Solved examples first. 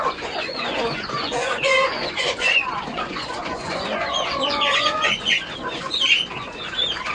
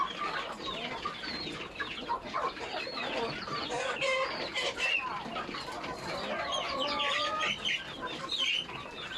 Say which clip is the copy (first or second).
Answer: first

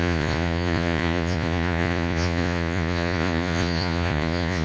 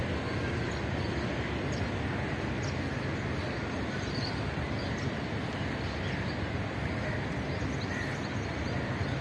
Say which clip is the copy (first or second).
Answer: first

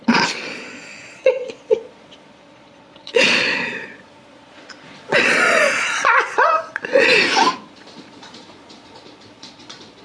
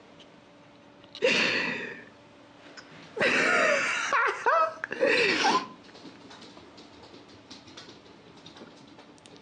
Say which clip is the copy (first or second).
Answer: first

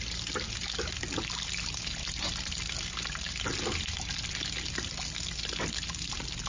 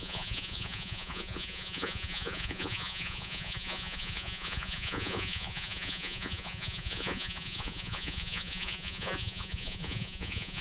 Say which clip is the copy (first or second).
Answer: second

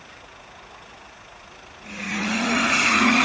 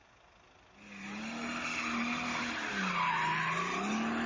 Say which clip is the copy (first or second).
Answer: first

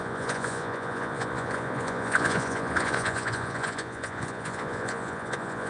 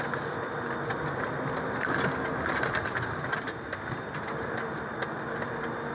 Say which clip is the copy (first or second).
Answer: first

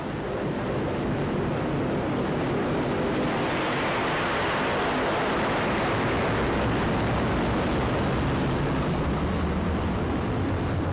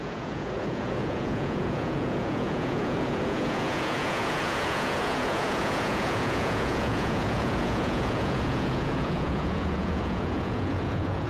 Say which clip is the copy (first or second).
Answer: second